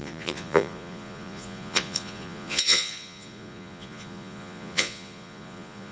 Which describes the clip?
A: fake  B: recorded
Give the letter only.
A